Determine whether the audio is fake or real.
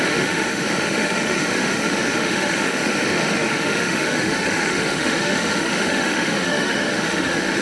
fake